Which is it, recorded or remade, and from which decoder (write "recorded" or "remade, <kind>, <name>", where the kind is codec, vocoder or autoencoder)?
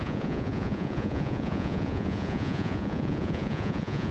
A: remade, vocoder, Vocos